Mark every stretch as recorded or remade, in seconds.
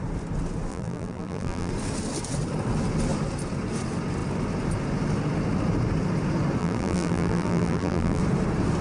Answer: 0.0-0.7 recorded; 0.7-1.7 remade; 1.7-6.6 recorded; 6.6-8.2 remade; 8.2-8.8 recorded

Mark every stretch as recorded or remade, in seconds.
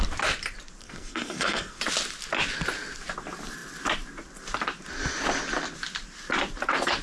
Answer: 0.0-0.8 recorded; 0.8-1.8 remade; 1.8-7.0 recorded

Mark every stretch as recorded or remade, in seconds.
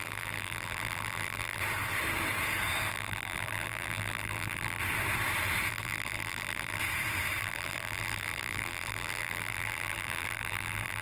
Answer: 0.0-1.6 remade; 1.6-2.9 recorded; 2.9-4.8 remade; 4.8-5.7 recorded; 5.7-6.8 remade; 6.8-7.4 recorded; 7.4-11.0 remade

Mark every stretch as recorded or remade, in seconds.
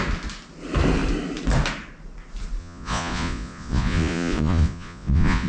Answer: 0.0-2.6 recorded; 2.6-5.5 remade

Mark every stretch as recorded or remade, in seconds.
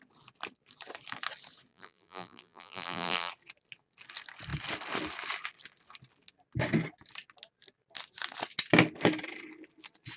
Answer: 0.0-1.7 recorded; 1.7-3.3 remade; 3.3-10.2 recorded